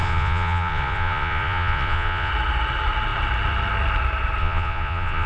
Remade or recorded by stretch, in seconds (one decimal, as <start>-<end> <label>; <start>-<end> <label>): 0.0-2.3 remade; 2.3-4.4 recorded; 4.4-5.3 remade